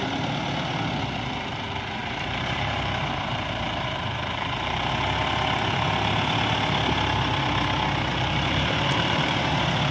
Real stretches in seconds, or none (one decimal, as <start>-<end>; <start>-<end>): 0.0-2.0; 4.9-8.1; 9.5-9.9